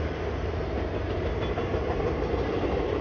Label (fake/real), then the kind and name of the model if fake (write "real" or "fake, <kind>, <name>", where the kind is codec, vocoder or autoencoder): real